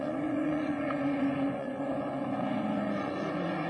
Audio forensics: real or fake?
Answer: fake